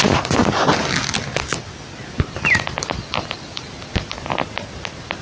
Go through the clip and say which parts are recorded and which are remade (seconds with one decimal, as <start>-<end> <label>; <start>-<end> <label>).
0.0-5.2 recorded